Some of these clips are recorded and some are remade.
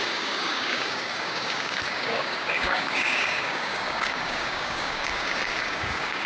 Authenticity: remade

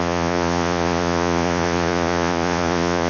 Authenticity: remade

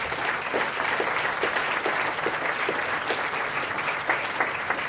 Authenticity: recorded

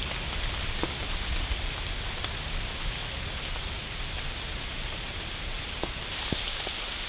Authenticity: recorded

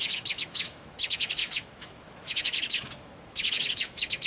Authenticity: remade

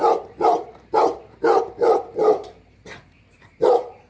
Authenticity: remade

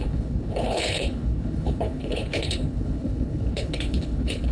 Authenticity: remade